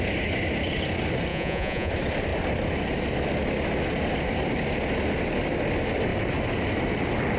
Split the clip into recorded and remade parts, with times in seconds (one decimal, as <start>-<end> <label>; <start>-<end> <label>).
0.0-1.3 recorded; 1.3-1.9 remade; 1.9-7.4 recorded